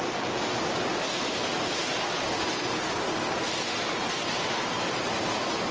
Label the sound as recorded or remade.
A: recorded